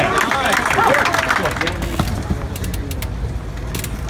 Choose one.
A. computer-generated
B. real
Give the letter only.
B